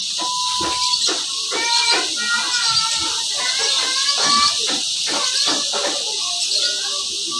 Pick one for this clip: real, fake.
real